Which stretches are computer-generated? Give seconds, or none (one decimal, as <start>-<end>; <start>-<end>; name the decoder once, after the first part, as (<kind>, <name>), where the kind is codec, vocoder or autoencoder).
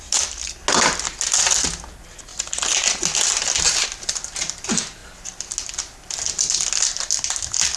none